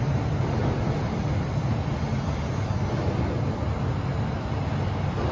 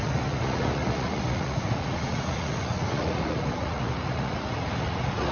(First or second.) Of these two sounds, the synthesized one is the second